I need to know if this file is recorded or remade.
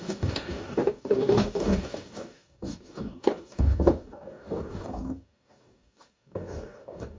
remade